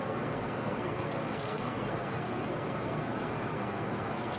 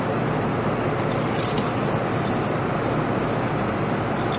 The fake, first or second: first